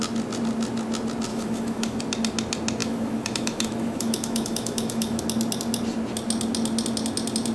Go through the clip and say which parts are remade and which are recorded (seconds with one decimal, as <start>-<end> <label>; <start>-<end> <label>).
0.0-1.3 recorded; 1.3-2.0 remade; 2.0-2.8 recorded; 2.8-5.2 remade; 5.2-7.5 recorded